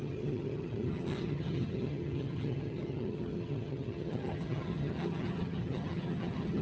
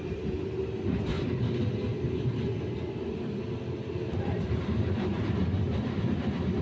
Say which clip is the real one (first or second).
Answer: second